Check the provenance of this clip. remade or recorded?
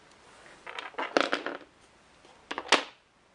recorded